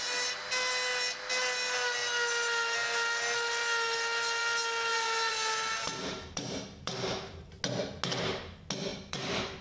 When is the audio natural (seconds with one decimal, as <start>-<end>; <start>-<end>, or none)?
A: 0.0-4.9; 7.4-8.9